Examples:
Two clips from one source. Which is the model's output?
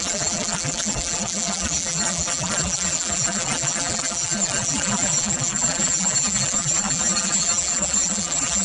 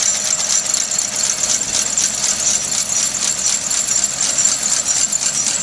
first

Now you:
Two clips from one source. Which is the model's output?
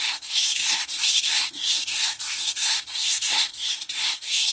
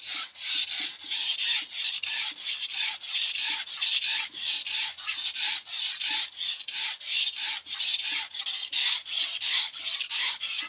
first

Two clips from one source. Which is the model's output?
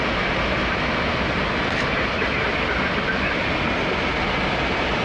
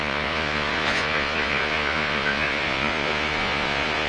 second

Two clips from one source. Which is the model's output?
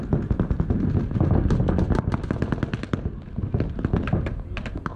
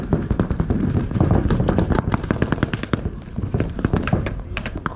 second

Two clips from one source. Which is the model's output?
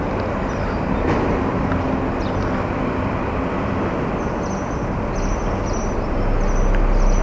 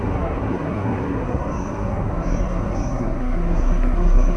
second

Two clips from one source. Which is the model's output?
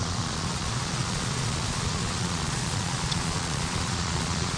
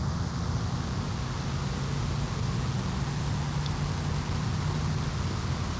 first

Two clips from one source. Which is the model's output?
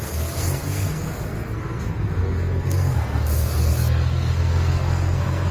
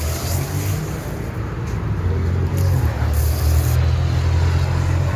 first